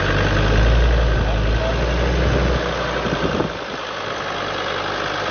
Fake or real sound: real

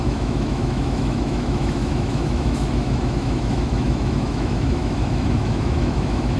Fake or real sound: fake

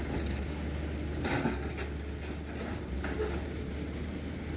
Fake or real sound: real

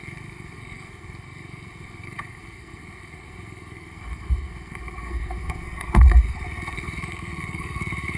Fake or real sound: fake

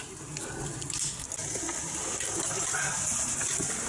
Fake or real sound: real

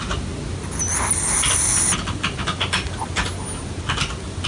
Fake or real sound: real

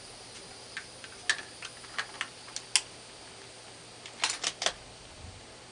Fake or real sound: real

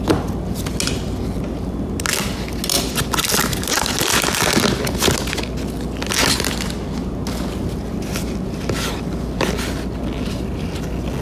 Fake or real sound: real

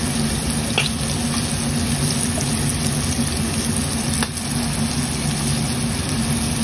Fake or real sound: real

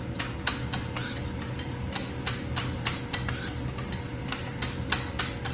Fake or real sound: real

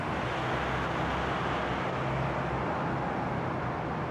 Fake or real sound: real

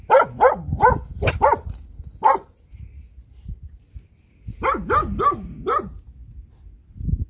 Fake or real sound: real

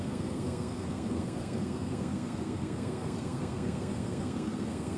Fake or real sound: fake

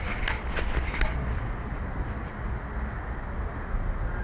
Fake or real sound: fake